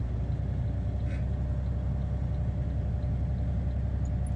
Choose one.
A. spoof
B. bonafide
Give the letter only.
B